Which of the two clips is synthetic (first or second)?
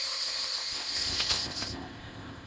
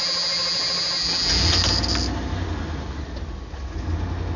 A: first